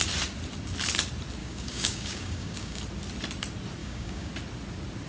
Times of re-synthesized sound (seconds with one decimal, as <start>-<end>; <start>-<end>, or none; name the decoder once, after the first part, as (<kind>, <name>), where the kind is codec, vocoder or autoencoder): 1.4-2.8 (codec, DAC); 3.8-4.3